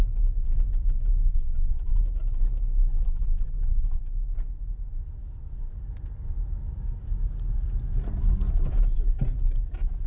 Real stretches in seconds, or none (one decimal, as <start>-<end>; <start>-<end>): 0.0-1.2; 2.0-2.9; 4.1-10.1